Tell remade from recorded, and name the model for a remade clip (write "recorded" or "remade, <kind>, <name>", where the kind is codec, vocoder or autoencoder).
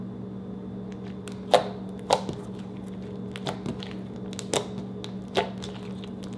recorded